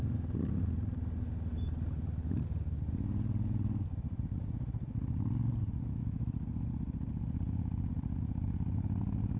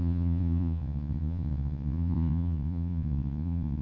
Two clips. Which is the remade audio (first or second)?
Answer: second